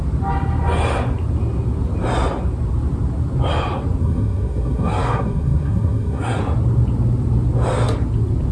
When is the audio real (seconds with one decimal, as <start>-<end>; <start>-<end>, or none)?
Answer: 0.0-4.0; 6.4-8.5